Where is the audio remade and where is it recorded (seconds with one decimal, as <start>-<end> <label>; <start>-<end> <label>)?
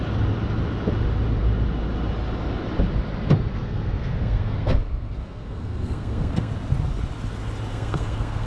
0.0-3.5 recorded; 3.5-6.5 remade; 6.5-7.7 recorded; 7.7-8.5 remade